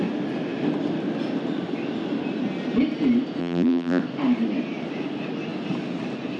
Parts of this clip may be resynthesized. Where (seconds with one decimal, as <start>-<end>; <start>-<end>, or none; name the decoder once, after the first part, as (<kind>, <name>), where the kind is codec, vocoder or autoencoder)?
3.4-4.0 (vocoder, BigVGAN v2)

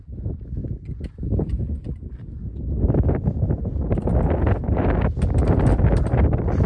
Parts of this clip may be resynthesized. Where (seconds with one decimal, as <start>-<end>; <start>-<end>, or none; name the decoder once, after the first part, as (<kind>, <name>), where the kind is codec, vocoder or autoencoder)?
none

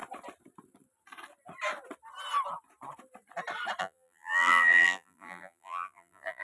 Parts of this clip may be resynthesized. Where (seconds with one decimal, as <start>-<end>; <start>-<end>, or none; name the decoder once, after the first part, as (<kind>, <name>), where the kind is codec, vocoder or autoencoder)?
3.8-6.4 (vocoder, BigVGAN v2)